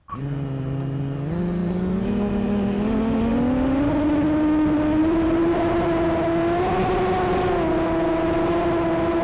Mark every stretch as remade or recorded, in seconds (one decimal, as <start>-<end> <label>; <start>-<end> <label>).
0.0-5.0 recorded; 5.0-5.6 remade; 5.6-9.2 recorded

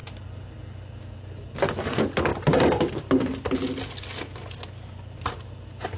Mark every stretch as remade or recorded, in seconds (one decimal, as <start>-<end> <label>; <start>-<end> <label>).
0.0-6.0 recorded

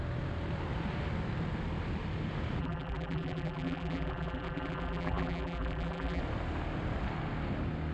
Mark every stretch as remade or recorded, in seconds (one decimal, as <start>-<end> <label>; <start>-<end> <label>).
0.0-2.6 recorded; 2.6-6.2 remade; 6.2-7.9 recorded

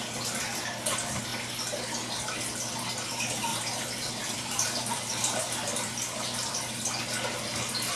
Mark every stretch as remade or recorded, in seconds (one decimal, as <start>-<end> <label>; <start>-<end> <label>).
0.0-3.5 recorded; 3.5-6.7 remade; 6.7-8.0 recorded